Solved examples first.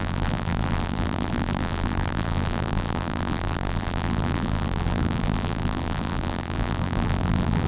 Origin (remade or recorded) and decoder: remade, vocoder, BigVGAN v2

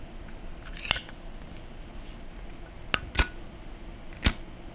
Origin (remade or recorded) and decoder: recorded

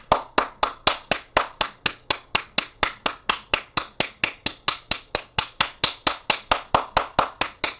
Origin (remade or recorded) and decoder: recorded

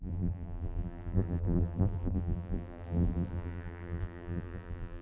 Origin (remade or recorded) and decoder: remade, vocoder, BigVGAN v2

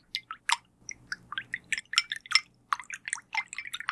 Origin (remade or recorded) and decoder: recorded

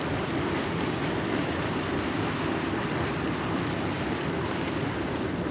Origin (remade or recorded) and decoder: remade, vocoder, BigVGAN v2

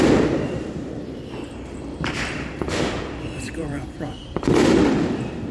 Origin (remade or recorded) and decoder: remade, vocoder, BigVGAN v2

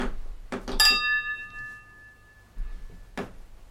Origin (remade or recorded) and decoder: recorded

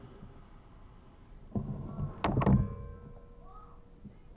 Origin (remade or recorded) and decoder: recorded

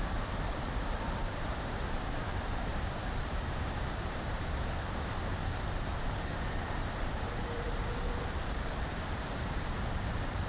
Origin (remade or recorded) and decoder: remade, vocoder, BigVGAN v2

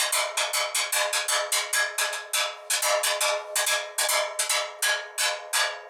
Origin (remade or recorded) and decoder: recorded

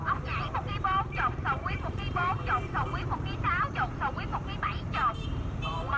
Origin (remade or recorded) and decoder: remade, vocoder, BigVGAN v2